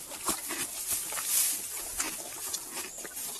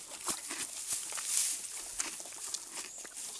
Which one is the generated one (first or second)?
first